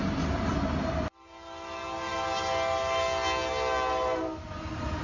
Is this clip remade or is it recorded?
recorded